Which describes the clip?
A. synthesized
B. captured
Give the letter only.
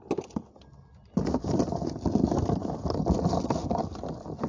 B